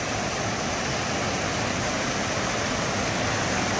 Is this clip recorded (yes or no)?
yes